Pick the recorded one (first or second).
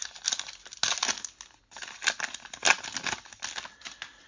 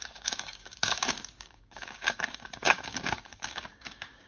first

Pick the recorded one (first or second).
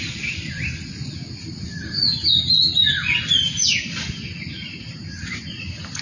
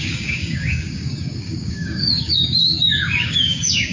first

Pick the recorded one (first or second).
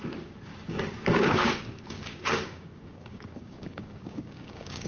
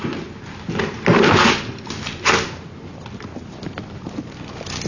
second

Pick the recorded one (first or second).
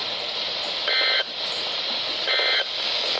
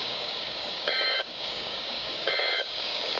first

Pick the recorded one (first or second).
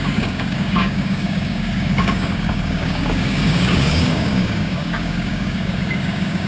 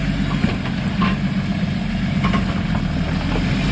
second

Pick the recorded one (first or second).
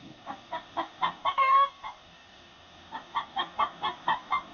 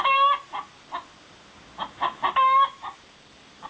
second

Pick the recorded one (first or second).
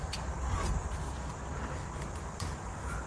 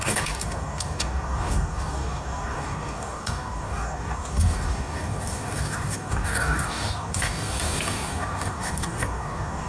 first